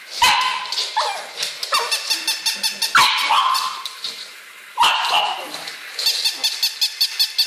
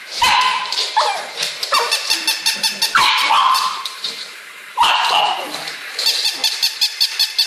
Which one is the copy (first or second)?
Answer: second